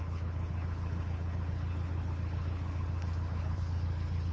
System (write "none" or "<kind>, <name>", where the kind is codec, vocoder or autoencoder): codec, HILCodec